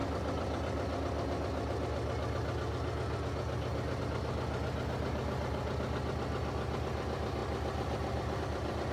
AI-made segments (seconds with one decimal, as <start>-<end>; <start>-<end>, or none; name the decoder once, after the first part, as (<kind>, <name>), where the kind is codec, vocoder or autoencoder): none